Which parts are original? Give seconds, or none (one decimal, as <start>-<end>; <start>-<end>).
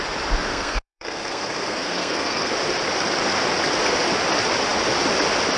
0.0-0.5; 2.5-5.6